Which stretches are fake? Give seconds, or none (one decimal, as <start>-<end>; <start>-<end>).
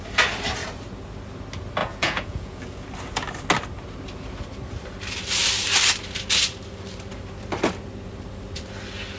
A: 1.8-2.6